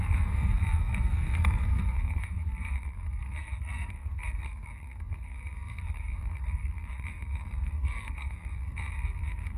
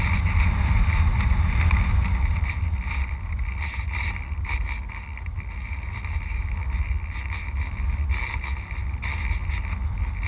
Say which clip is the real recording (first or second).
second